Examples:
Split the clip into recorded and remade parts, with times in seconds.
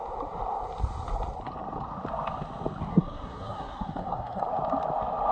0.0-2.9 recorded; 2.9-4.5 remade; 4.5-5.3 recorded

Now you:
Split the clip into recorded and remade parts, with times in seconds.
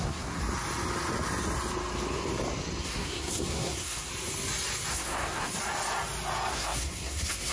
0.0-0.4 remade; 0.4-2.8 recorded; 2.8-4.1 remade; 4.1-4.9 recorded; 4.9-5.5 remade; 5.5-6.5 recorded; 6.5-7.5 remade